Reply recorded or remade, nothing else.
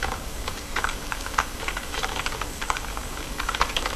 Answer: remade